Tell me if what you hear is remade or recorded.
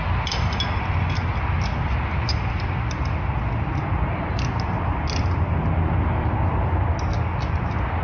recorded